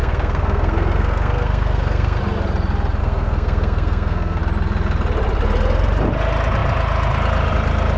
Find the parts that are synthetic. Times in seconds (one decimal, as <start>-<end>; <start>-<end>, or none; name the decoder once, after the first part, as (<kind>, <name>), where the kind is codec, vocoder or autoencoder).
0.0-2.2 (codec, SNAC); 3.0-4.4